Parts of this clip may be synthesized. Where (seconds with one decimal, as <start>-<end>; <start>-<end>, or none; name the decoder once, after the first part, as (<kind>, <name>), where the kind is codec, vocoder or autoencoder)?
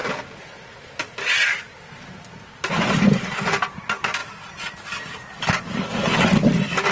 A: none